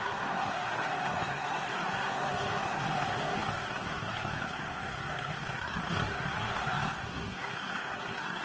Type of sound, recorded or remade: remade